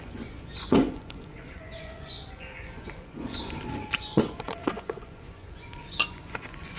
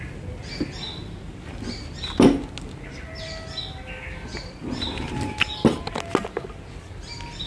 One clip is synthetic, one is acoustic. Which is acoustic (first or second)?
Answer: second